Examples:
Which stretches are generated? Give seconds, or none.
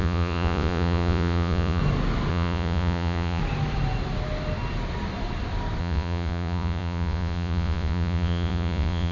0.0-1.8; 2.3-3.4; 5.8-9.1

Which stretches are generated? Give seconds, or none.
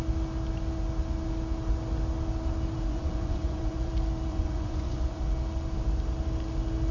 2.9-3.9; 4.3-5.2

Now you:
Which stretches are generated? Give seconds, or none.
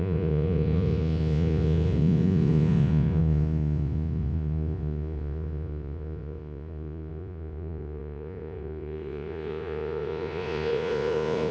0.0-11.5